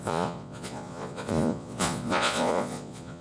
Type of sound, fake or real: fake